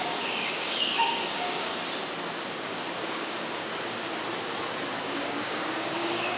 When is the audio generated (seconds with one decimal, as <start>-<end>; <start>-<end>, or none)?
0.0-1.7; 2.5-3.7; 5.0-6.4